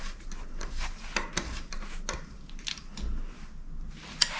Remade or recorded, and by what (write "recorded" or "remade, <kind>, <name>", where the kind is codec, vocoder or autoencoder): recorded